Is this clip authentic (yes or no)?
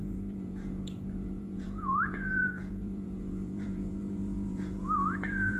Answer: no